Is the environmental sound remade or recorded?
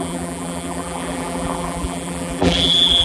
remade